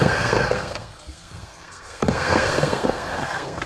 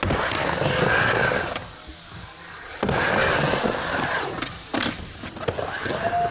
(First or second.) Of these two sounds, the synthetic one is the first